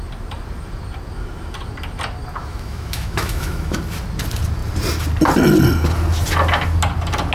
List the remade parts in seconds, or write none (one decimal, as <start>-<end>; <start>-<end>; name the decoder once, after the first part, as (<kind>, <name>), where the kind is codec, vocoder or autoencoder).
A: 2.4-3.8 (autoencoder, DAC-VAE)